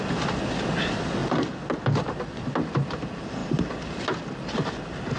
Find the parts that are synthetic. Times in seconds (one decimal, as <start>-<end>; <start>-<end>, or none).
none